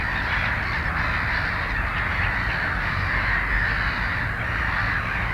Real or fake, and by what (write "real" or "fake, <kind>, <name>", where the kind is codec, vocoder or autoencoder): real